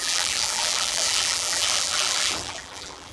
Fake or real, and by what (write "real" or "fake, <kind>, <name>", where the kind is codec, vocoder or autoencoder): fake, vocoder, BigVGAN v2